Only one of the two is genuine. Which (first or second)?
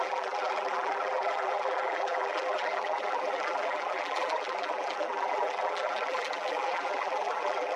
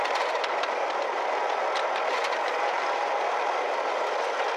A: second